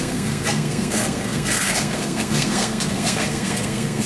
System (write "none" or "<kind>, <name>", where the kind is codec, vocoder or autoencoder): codec, SNAC